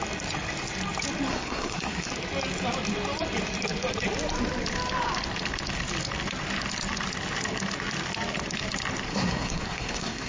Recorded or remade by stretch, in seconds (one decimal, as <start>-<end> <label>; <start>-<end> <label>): 0.0-1.3 recorded; 1.3-2.1 remade; 2.1-9.1 recorded; 9.1-10.3 remade